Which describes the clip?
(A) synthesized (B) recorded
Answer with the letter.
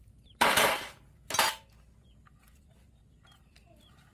B